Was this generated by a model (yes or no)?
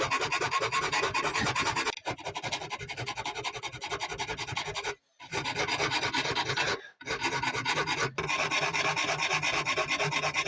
no